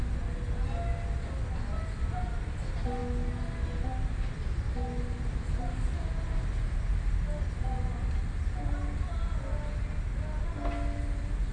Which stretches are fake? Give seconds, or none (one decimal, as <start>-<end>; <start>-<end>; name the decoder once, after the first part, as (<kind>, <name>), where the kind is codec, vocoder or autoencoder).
none